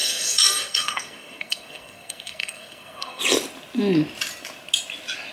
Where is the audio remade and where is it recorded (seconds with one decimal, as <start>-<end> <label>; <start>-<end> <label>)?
0.0-3.2 remade; 3.2-5.3 recorded

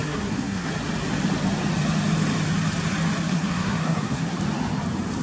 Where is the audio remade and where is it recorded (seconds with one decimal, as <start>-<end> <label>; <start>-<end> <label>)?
0.0-0.7 remade; 0.7-3.3 recorded; 3.3-4.4 remade; 4.4-5.2 recorded

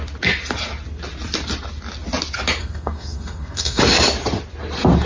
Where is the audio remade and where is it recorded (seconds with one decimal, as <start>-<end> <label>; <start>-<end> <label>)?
0.0-2.6 recorded; 2.6-3.8 remade; 3.8-5.1 recorded

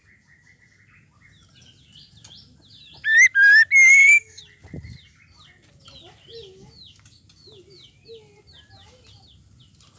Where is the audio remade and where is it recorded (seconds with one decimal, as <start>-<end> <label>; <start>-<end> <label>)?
0.0-3.9 recorded; 3.9-4.4 remade; 4.4-10.0 recorded

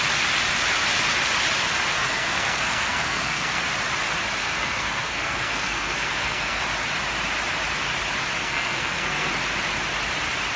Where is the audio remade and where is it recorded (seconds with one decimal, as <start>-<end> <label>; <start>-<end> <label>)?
0.0-2.0 recorded; 2.0-3.6 remade; 3.6-4.4 recorded; 4.4-6.6 remade; 6.6-8.4 recorded; 8.4-9.3 remade; 9.3-10.6 recorded

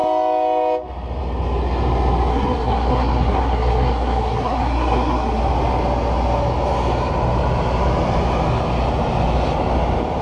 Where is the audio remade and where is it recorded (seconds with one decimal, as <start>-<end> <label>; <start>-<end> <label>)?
0.0-2.3 recorded; 2.3-5.4 remade; 5.4-10.2 recorded

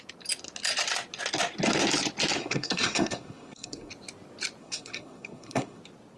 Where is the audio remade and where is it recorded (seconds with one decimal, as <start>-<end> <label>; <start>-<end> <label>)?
0.0-2.4 recorded; 2.4-3.9 remade; 3.9-4.6 recorded; 4.6-5.8 remade; 5.8-6.2 recorded